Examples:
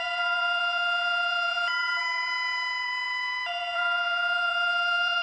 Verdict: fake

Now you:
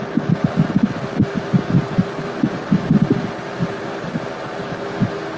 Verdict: real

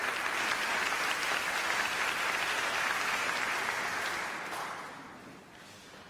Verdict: real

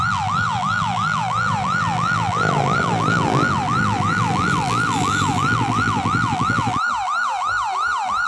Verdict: fake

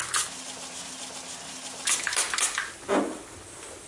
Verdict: real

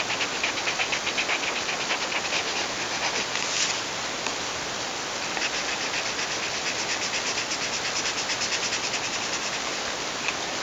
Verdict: real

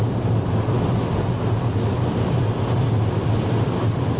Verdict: real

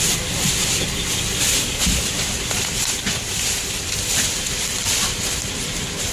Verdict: fake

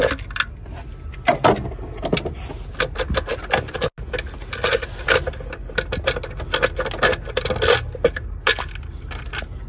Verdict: real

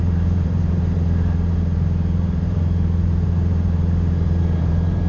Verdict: fake